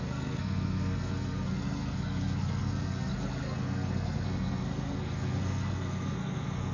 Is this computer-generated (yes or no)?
yes